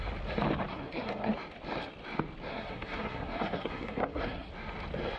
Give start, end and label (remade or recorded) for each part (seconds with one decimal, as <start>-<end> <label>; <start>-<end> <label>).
0.0-0.7 recorded; 0.7-1.3 remade; 1.3-2.5 recorded; 2.5-4.5 remade; 4.5-5.2 recorded